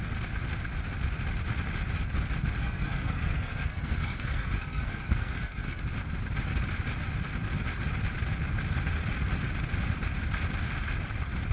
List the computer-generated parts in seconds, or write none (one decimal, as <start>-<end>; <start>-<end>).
2.6-5.8